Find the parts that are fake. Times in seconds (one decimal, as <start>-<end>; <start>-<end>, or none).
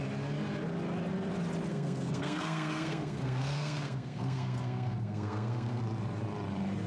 1.7-5.8